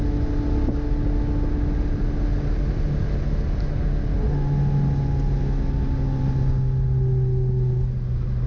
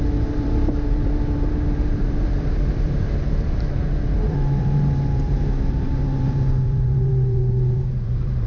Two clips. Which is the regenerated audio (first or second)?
second